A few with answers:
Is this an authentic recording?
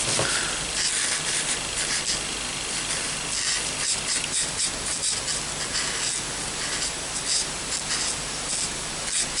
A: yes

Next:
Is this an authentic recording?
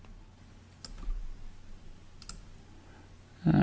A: yes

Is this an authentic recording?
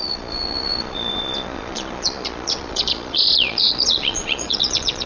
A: no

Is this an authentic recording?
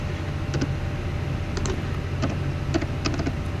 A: yes